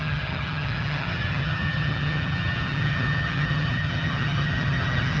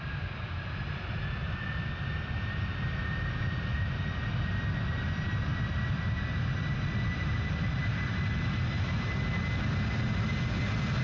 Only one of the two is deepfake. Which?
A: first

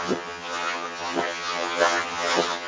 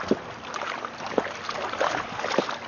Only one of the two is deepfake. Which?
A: first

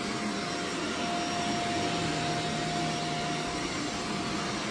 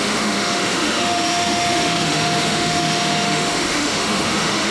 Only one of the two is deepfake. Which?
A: second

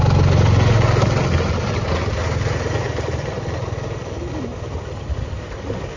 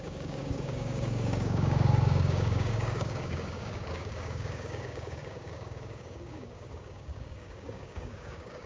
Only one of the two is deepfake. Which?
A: second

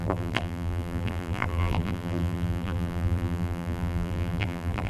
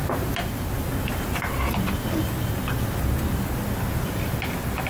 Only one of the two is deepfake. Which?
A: first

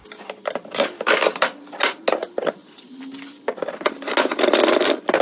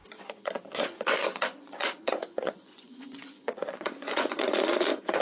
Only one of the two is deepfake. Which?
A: second